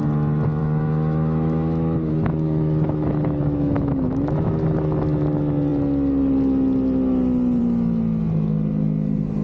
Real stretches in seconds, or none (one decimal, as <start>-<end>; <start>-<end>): 0.0-0.6; 4.5-9.4

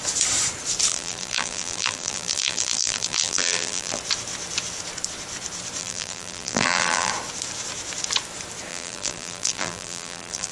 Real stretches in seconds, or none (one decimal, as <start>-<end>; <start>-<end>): 0.0-0.9; 4.0-5.8; 7.1-8.7

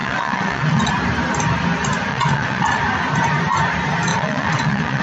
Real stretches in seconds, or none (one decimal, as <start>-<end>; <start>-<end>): 0.9-2.1; 2.8-4.1

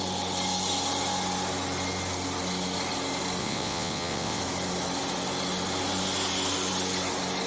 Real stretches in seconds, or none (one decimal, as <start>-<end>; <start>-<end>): 0.0-3.4; 4.4-7.5

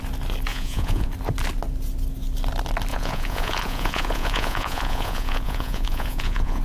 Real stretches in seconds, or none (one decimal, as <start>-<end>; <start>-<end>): 0.0-0.5; 1.1-2.9

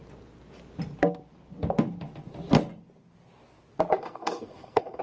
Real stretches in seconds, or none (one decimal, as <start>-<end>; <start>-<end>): 0.0-4.0

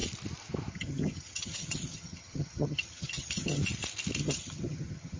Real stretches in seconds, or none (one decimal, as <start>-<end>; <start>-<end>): 0.0-0.7; 3.6-4.2

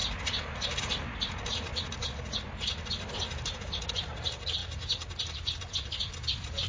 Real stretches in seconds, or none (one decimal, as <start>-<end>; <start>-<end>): 0.0-6.7